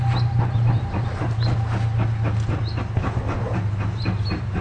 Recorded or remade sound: recorded